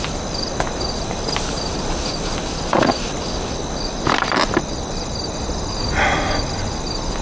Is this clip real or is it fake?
real